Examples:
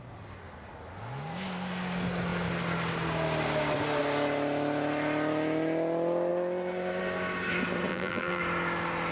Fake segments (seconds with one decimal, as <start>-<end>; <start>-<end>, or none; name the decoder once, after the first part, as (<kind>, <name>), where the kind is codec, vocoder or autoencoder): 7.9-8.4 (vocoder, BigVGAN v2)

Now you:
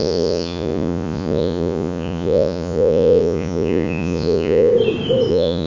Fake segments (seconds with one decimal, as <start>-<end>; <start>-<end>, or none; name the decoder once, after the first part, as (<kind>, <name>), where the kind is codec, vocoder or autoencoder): 0.0-4.7 (vocoder, Vocos); 5.3-5.7

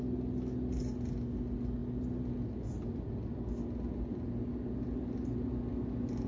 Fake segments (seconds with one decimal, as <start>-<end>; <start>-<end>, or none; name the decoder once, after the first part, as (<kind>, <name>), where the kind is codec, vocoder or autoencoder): none

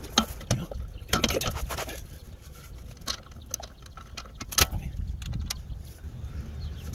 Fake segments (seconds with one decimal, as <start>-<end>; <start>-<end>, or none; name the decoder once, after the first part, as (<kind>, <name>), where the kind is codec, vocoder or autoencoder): none

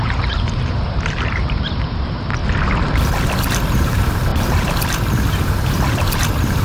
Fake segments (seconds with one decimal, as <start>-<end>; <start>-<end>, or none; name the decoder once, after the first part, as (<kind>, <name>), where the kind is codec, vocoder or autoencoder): 0.0-2.4 (vocoder, BigVGAN v2); 3.8-6.6